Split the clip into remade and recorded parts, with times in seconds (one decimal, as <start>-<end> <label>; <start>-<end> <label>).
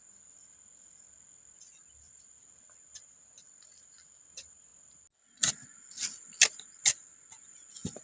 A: 0.0-8.0 recorded